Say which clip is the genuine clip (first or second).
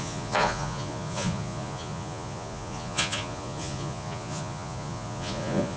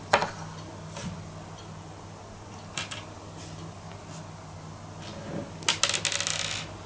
second